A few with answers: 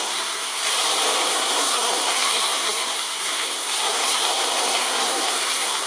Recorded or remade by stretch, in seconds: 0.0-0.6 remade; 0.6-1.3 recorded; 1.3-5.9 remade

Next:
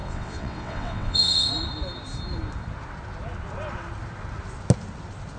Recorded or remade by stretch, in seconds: 0.0-1.5 remade; 1.5-5.4 recorded

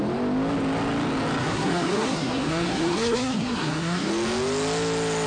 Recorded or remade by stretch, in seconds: 0.0-1.4 recorded; 1.4-4.1 remade; 4.1-5.3 recorded

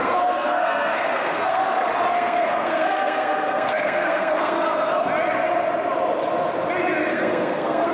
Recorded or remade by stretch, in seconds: 0.0-1.6 remade; 1.6-2.1 recorded; 2.1-4.6 remade; 4.6-7.1 recorded; 7.1-7.9 remade

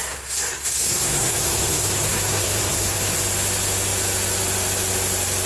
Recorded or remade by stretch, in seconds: 0.0-3.2 remade; 3.2-5.5 recorded

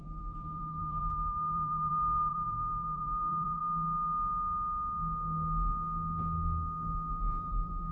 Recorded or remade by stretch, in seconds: 0.0-3.6 remade; 3.6-7.1 recorded; 7.1-7.9 remade

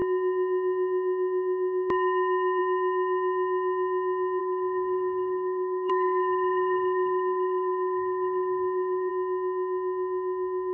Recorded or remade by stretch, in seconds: 0.0-4.4 recorded; 4.4-9.1 remade; 9.1-10.7 recorded

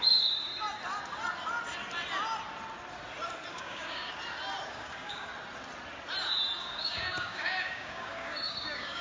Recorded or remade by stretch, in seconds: 0.0-0.5 remade; 0.5-3.5 recorded; 3.5-4.2 remade; 4.2-4.7 recorded; 4.7-5.3 remade; 5.3-6.6 recorded; 6.6-9.0 remade